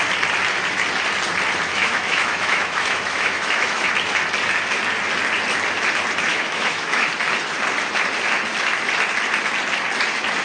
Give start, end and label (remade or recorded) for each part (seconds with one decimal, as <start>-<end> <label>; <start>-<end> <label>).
0.0-1.7 recorded; 1.7-3.9 remade; 3.9-6.3 recorded; 6.3-7.1 remade; 7.1-10.4 recorded